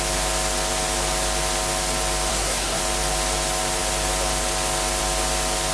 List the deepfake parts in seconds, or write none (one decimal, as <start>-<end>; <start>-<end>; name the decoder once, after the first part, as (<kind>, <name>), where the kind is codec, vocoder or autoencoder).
2.3-2.8 (codec, SNAC)